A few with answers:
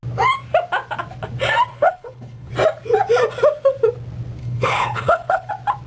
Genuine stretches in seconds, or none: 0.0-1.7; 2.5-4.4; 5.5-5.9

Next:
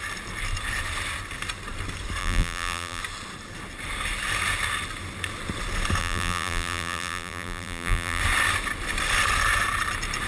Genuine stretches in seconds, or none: 0.0-2.2; 3.0-6.0; 8.2-10.3